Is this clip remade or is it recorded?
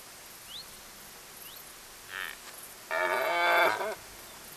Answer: recorded